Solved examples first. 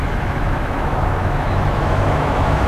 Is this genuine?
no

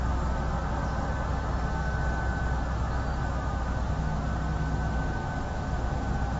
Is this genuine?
yes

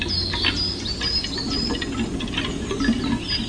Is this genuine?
yes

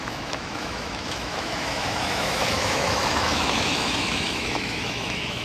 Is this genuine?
no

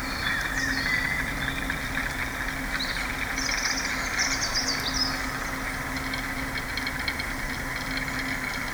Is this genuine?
yes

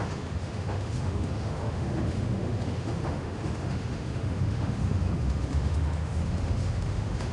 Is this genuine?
no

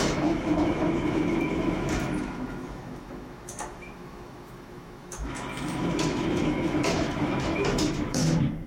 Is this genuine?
no